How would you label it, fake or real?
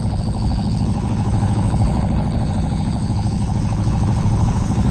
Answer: fake